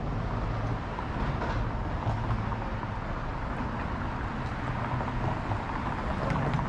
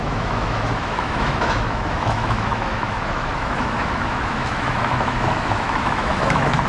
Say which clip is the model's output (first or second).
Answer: second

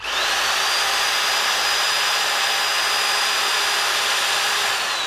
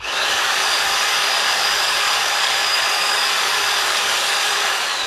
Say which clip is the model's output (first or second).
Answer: second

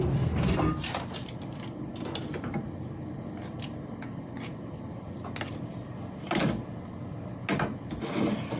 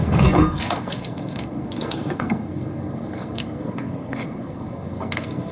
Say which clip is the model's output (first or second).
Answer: second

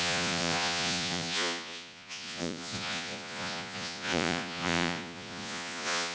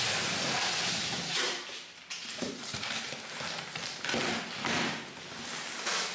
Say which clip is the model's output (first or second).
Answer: first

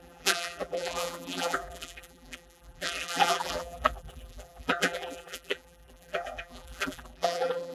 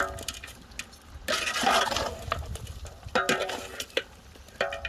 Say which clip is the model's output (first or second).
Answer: first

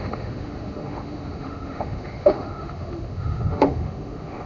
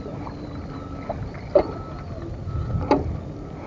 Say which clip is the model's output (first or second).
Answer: first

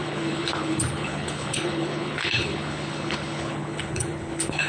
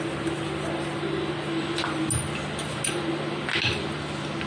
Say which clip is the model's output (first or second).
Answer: first